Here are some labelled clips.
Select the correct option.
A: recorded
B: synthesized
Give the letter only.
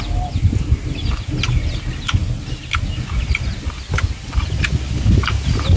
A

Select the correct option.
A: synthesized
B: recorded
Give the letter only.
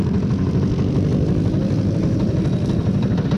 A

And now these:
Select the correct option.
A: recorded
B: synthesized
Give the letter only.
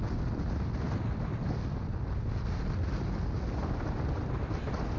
A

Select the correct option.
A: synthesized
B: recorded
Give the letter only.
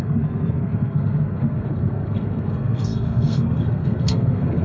A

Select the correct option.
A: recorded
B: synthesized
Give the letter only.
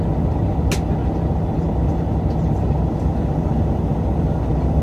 A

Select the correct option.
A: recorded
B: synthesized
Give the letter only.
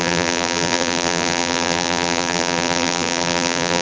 B